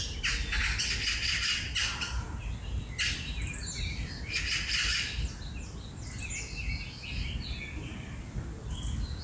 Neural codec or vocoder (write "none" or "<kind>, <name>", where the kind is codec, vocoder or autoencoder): none